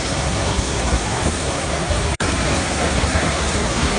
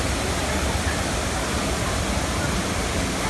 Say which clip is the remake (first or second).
first